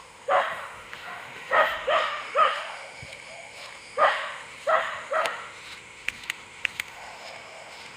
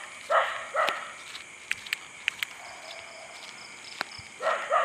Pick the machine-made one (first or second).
first